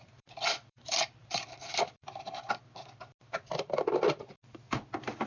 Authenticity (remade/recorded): remade